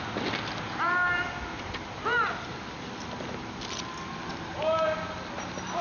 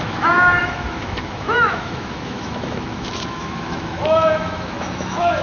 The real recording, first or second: first